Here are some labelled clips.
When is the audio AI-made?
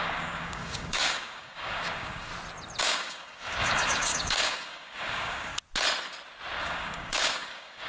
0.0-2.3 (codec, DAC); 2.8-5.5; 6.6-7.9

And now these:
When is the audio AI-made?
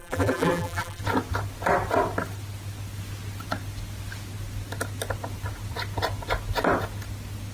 0.0-1.0 (vocoder, BigVGAN v2)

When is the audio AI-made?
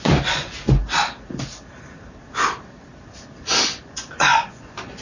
0.0-0.8 (vocoder, Vocos); 3.8-5.0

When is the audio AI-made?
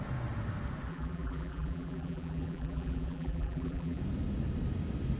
0.9-4.0 (vocoder, BigVGAN v2)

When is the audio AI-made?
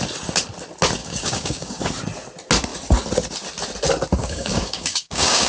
1.0-1.8 (codec, DAC); 4.2-5.5